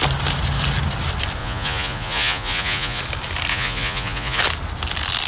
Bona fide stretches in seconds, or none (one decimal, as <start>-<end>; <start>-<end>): 0.0-1.4; 3.0-3.5; 4.4-5.3